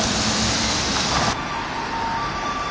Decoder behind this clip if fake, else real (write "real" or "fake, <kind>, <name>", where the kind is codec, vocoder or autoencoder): real